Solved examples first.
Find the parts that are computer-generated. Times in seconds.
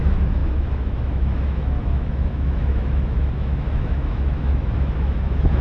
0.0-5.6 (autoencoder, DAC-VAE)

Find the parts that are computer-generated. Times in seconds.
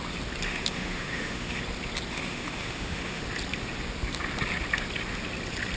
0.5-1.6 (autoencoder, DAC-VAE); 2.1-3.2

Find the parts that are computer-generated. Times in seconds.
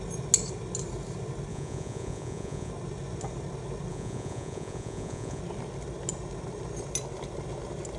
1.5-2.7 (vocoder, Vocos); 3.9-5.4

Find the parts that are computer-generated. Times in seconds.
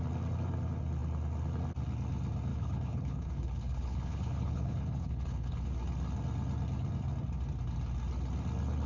2.5-5.7 (codec, HILCodec)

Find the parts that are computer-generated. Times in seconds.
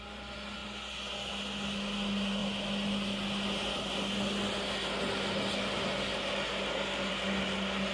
none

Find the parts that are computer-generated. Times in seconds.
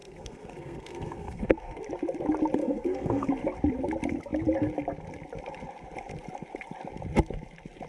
0.0-1.8 (codec, SNAC); 2.6-3.3